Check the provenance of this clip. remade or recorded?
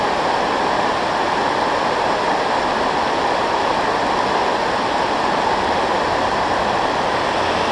recorded